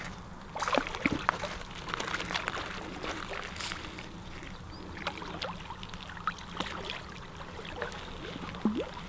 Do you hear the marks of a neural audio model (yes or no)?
no